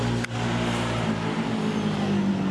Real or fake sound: real